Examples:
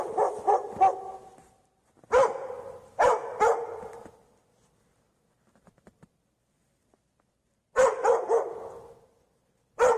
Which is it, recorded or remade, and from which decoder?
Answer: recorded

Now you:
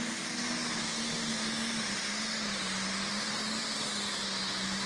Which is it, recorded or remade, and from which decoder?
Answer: recorded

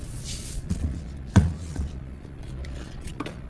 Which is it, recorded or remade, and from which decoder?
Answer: remade, vocoder, Vocos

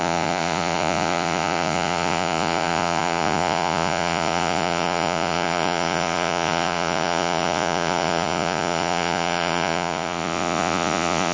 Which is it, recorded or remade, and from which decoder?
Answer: remade, vocoder, Vocos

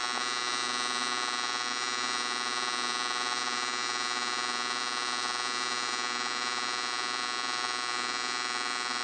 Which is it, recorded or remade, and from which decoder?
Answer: recorded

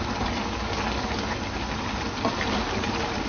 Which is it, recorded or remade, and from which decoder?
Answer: recorded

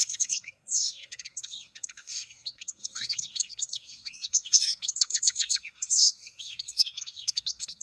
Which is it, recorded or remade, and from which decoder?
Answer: remade, codec, SNAC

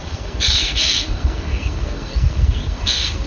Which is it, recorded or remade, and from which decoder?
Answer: remade, codec, SNAC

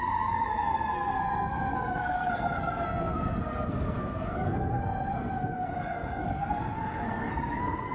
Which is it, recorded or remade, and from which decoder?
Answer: remade, codec, SNAC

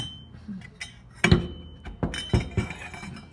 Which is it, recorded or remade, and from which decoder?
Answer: recorded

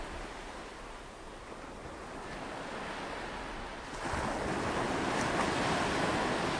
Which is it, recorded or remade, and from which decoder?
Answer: recorded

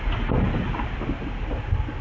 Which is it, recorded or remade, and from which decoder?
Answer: recorded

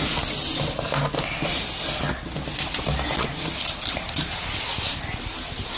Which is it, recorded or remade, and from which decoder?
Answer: recorded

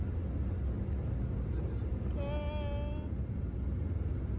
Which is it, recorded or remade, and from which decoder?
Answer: recorded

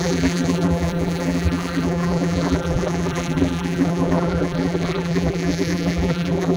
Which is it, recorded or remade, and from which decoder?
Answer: remade, vocoder, BigVGAN v2